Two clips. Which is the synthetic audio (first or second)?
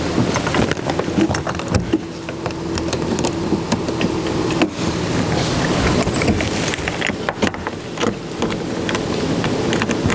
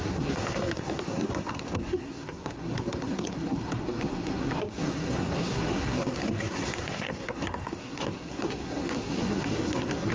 second